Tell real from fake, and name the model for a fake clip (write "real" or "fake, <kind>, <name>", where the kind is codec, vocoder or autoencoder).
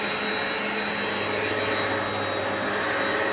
real